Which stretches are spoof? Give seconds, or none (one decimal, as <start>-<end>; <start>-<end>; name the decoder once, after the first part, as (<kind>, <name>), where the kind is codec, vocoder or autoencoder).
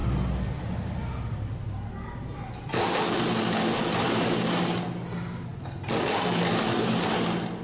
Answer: none